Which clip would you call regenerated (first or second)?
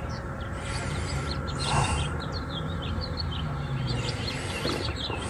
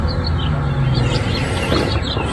first